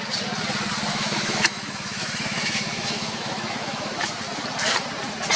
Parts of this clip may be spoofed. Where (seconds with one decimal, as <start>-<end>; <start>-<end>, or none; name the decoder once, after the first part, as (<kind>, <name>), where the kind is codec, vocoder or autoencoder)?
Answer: 0.9-4.1 (autoencoder, DAC-VAE)